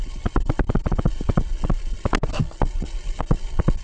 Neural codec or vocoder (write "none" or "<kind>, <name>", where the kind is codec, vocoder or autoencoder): none